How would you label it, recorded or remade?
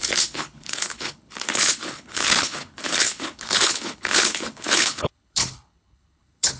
remade